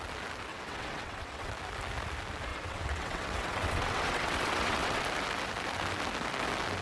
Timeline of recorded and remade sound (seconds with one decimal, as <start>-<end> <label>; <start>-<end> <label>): 0.0-0.5 recorded; 0.5-1.5 remade; 1.5-2.5 recorded; 2.5-5.0 remade; 5.0-6.8 recorded